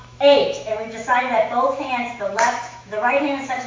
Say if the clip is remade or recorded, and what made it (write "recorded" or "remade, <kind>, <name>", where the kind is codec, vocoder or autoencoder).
remade, autoencoder, DAC-VAE